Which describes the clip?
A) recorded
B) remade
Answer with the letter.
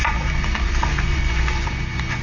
B